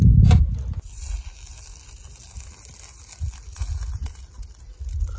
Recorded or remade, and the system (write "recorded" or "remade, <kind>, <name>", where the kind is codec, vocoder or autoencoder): recorded